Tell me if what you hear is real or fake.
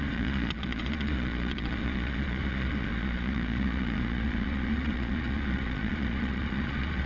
fake